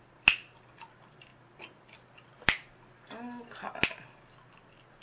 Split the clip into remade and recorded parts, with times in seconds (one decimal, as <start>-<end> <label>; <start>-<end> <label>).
0.0-5.0 recorded